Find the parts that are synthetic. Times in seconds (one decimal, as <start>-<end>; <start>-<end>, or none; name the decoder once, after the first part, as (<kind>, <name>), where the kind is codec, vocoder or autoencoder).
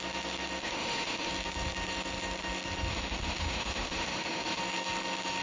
0.6-1.3 (autoencoder, DAC-VAE); 2.9-4.6